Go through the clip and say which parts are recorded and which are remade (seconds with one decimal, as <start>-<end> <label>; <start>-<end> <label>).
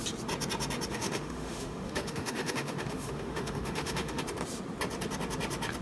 0.0-0.9 recorded; 0.9-4.2 remade; 4.2-5.8 recorded